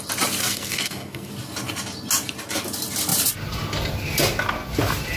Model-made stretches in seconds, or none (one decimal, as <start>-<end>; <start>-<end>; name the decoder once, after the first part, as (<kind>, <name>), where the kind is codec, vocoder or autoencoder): 0.4-1.3 (codec, SNAC)